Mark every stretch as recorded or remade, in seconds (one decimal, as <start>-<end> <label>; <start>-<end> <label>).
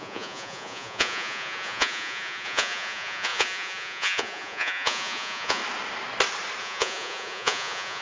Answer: 0.0-5.6 remade; 5.6-6.6 recorded; 6.6-8.0 remade